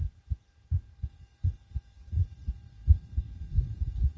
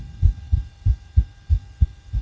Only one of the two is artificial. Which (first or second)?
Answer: first